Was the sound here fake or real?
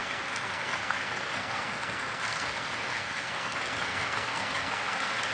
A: fake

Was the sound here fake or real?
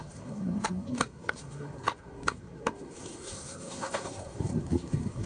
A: fake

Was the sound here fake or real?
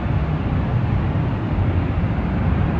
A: real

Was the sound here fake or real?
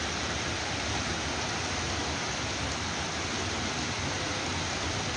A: real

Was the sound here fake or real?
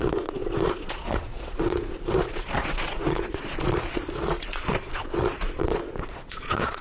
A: fake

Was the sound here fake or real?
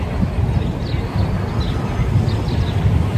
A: real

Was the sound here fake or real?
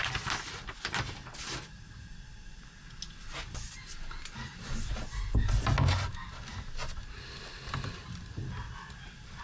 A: real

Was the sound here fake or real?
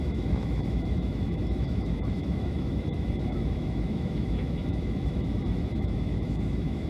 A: fake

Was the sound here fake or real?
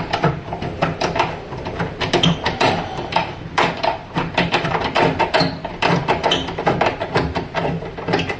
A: fake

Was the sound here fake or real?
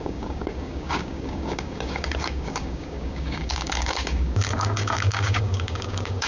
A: fake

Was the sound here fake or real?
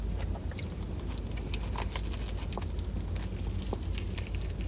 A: real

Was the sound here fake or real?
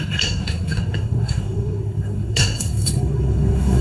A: fake